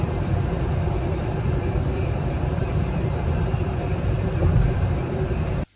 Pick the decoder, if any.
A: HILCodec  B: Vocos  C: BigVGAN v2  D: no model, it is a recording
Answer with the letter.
C